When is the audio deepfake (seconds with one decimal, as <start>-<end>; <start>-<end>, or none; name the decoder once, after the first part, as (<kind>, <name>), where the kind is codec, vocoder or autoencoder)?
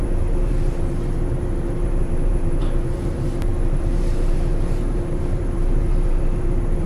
0.0-6.9 (vocoder, BigVGAN v2)